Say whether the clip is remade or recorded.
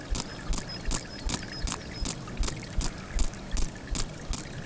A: recorded